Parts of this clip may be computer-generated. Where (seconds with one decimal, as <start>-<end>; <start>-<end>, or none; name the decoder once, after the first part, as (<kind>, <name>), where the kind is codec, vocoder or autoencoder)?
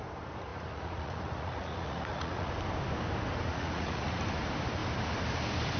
0.5-2.5 (vocoder, Vocos); 3.5-4.2